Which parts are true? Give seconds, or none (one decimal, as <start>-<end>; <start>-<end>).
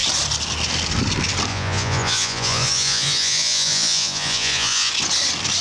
0.0-1.5; 4.9-5.6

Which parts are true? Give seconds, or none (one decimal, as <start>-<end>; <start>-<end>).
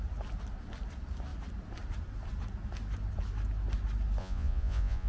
0.0-4.2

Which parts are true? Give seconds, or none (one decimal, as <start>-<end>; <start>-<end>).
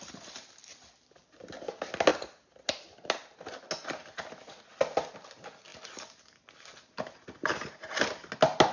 0.0-8.7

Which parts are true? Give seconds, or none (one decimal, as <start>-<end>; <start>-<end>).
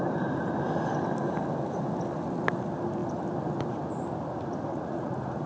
0.0-4.7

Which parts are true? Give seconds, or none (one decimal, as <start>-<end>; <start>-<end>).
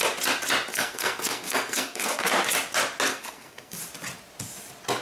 0.0-0.7; 2.3-3.1; 3.8-5.0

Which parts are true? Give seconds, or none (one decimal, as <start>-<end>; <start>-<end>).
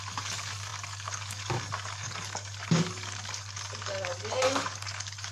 none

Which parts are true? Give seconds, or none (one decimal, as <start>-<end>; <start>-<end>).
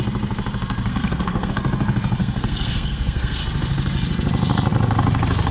0.0-0.9; 1.5-2.2; 3.4-5.5